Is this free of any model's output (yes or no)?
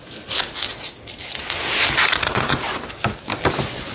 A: yes